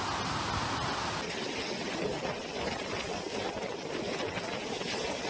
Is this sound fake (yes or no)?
no